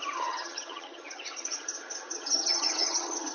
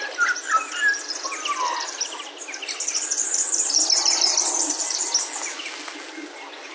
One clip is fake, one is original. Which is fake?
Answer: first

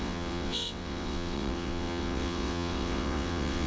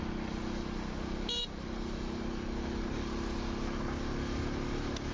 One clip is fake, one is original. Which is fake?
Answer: first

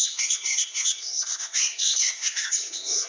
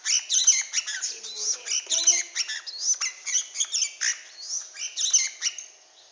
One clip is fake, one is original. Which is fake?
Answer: first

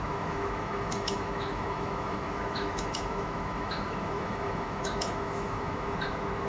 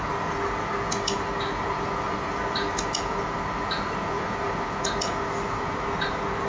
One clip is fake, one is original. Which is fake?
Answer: first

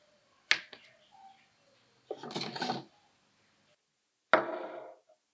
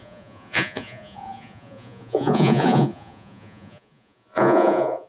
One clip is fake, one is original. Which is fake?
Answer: second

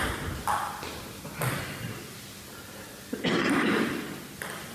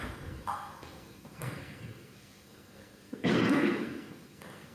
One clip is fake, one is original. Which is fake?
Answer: second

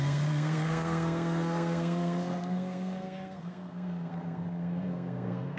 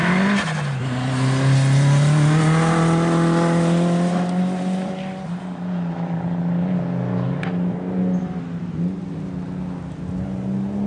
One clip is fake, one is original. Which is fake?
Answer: first